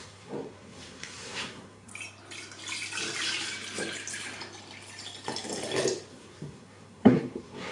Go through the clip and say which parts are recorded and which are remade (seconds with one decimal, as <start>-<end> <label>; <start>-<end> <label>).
0.0-1.9 remade; 1.9-6.1 recorded; 6.1-7.7 remade